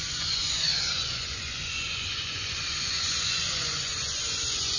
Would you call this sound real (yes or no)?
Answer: no